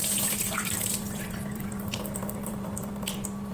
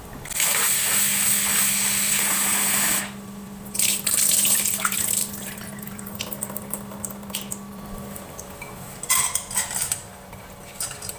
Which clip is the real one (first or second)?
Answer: second